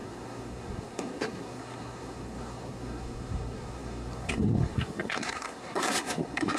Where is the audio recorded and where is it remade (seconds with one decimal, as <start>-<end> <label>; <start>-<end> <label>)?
0.0-6.6 remade